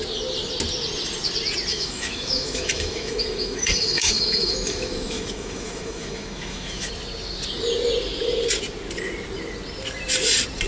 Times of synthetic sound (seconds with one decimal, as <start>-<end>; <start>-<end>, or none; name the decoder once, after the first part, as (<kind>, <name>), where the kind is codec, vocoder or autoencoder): 1.7-6.9 (autoencoder, DAC-VAE)